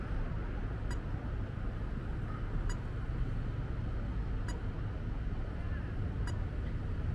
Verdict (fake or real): real